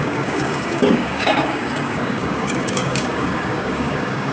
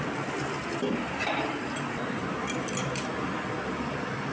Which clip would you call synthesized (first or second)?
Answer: first